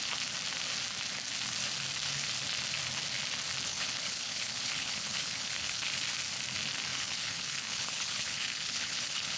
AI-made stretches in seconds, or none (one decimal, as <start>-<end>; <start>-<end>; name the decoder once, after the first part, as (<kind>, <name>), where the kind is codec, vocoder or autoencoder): 3.7-5.9 (codec, HILCodec); 6.9-9.4